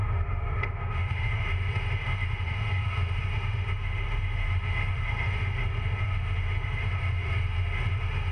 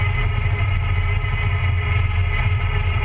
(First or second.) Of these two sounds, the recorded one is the second